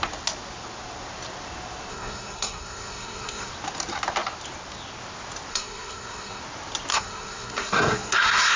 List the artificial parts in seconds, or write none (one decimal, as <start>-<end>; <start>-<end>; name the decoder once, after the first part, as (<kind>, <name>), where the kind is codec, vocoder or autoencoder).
1.9-3.5 (codec, SNAC); 5.5-6.4; 6.9-8.6